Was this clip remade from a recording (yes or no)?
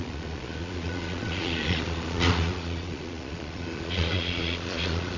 yes